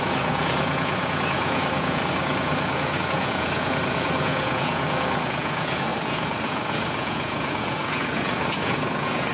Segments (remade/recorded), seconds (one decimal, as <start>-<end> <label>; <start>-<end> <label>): 0.0-9.3 remade